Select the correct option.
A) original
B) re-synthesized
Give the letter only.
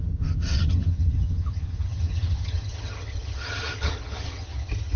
B